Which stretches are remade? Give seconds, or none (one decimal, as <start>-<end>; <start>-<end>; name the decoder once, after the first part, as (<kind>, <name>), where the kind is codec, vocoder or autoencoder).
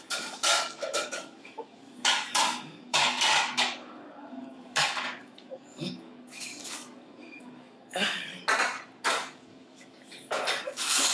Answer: 0.0-8.3 (codec, DAC); 9.0-11.1